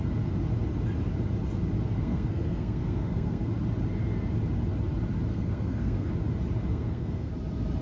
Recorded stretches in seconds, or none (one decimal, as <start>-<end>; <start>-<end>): 0.0-2.0; 3.5-5.3; 6.1-6.7; 7.3-7.8

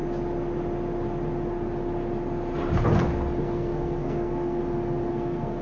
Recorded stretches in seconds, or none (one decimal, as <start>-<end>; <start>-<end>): 0.0-3.4; 4.6-5.1

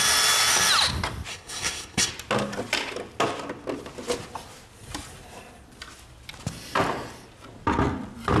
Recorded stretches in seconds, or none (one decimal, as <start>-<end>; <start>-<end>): 0.0-1.3; 2.1-8.4

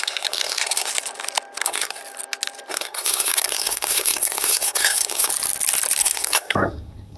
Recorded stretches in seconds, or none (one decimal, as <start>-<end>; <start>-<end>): 0.9-1.6; 2.0-2.7; 5.3-6.0

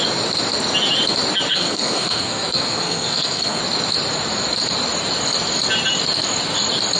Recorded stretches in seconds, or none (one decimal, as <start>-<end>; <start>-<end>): 0.0-1.5; 3.6-7.0

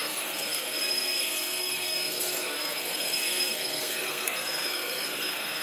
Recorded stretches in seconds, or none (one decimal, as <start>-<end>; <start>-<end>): none